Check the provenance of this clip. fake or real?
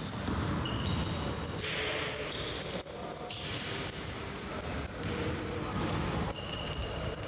real